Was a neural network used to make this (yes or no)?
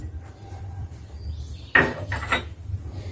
no